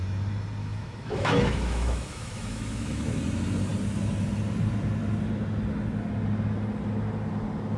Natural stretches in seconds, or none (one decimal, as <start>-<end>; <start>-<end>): 0.0-0.6; 3.2-7.8

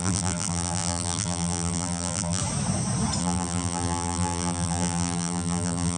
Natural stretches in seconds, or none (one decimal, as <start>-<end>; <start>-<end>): 2.4-3.2

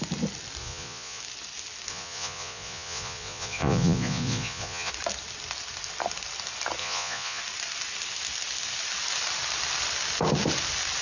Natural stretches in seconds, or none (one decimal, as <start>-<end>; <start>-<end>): 0.0-0.6; 1.2-1.9; 4.9-6.8; 7.4-11.0

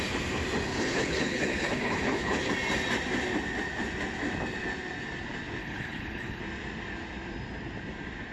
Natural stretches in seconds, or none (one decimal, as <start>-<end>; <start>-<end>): 0.0-0.7; 2.5-5.6; 6.4-8.3

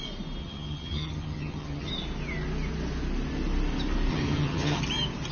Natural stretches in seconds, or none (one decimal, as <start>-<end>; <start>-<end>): 0.0-0.4; 1.9-4.1; 4.8-5.3

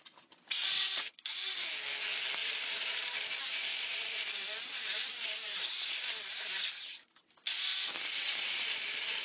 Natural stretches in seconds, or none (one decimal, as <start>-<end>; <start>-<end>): 0.0-2.4; 3.0-4.6; 5.7-9.2

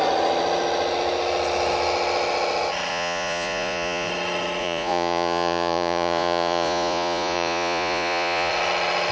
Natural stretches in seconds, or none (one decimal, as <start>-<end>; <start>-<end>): 0.0-2.9; 4.1-4.6; 8.5-9.1